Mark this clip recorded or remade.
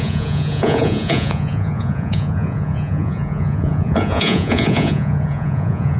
remade